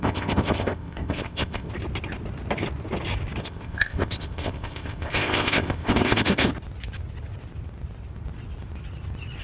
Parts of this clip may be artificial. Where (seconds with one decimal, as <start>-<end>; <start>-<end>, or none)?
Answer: 0.0-1.7; 3.4-6.5